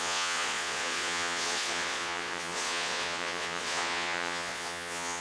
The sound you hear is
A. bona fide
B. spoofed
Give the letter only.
B